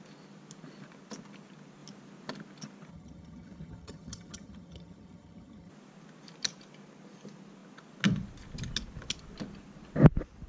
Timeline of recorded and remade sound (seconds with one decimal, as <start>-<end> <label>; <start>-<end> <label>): 0.0-2.9 recorded; 2.9-5.7 remade; 5.7-10.5 recorded